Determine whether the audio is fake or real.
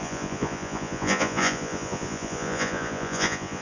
fake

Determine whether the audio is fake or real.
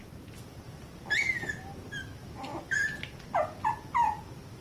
real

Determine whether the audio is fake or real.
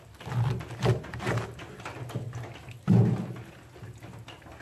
real